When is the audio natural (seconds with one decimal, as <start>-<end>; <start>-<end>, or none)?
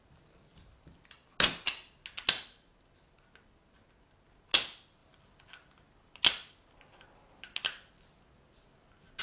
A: 0.0-9.2